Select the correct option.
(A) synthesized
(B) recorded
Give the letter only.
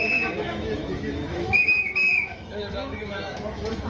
A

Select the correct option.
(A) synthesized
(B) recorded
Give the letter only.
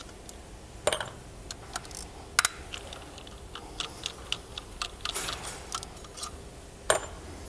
B